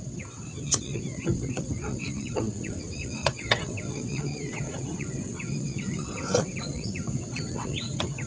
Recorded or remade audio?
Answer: remade